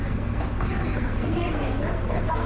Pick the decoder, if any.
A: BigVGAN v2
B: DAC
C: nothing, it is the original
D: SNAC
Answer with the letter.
D